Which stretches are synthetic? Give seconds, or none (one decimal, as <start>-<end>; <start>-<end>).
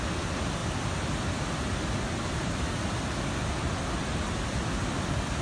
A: none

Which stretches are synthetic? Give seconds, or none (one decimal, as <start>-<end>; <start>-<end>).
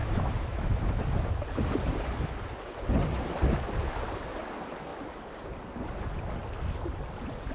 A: 0.0-1.0